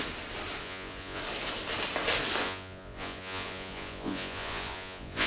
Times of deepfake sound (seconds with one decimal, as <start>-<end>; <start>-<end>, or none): 0.6-1.2; 2.4-5.3